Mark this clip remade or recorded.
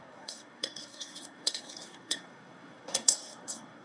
remade